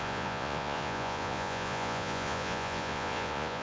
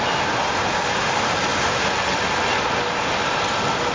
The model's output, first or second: first